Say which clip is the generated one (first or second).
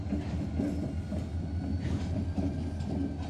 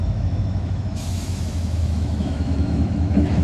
second